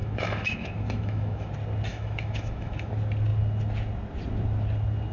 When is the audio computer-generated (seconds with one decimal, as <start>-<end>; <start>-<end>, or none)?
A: 0.0-1.5; 1.9-2.9

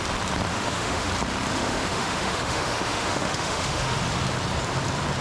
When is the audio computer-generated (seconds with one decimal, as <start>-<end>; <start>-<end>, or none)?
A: 0.5-1.1; 1.5-4.0